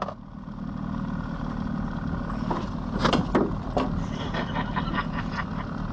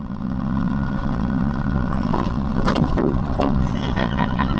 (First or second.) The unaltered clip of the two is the first